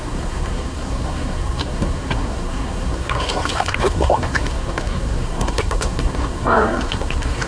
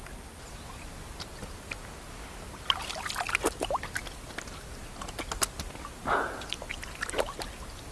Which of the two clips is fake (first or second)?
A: first